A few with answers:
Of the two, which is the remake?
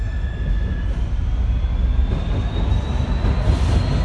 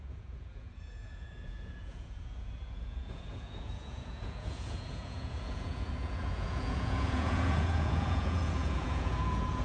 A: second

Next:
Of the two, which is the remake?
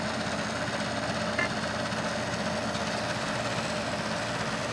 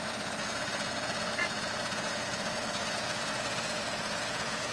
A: second